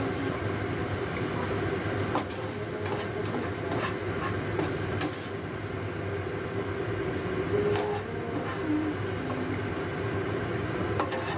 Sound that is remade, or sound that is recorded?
recorded